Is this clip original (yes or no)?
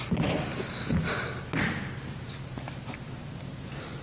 yes